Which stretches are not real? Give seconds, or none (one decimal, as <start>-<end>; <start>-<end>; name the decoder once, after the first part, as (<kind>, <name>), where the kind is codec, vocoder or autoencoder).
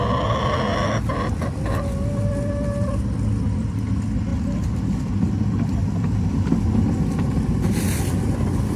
none